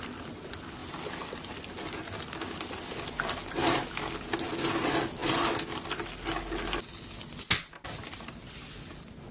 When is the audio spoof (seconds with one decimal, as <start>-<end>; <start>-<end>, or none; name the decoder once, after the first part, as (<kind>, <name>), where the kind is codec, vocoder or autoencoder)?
none